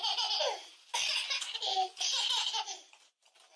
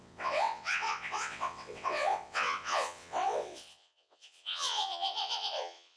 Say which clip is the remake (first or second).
second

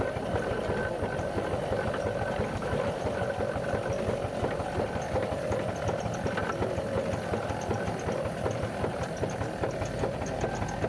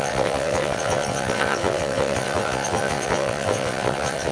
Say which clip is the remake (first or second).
second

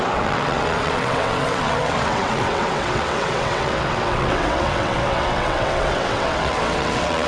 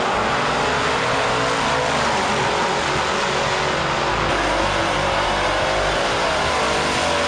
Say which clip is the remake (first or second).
first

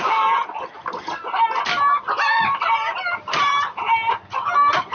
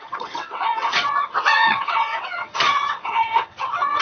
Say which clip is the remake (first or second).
second